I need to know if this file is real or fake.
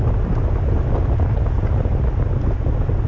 real